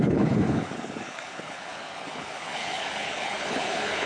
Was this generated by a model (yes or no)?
yes